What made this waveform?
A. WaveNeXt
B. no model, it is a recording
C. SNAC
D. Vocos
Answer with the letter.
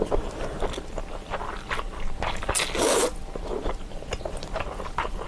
B